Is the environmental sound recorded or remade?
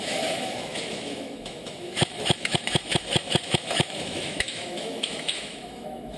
remade